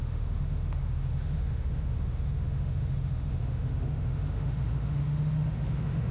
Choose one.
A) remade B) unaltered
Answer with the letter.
A